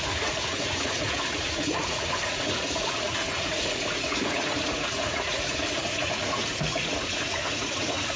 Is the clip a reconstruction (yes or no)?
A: yes